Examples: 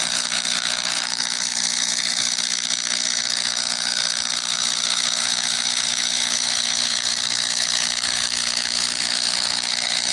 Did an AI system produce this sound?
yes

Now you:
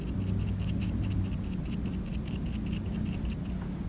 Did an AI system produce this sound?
no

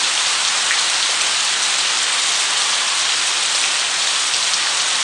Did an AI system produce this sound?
no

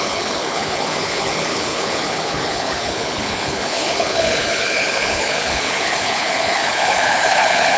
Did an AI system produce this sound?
yes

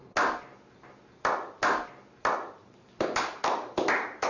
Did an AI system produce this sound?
no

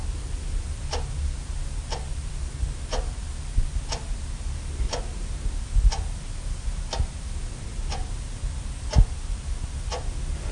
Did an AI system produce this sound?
no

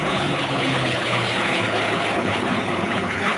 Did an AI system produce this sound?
yes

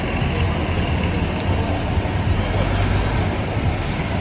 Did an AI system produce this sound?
no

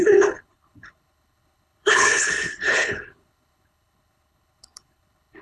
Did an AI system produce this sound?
yes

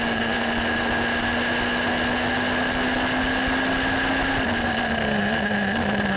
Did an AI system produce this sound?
no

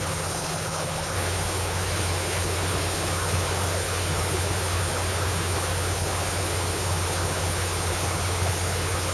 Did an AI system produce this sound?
yes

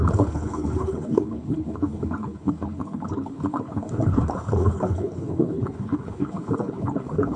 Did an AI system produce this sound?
yes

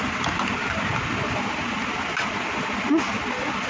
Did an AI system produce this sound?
no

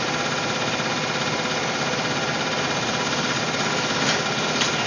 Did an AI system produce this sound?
no